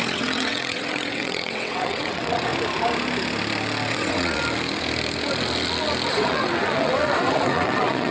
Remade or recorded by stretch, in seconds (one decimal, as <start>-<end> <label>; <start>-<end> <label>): 0.0-2.5 remade; 2.5-3.9 recorded; 3.9-4.4 remade; 4.4-6.1 recorded; 6.1-8.1 remade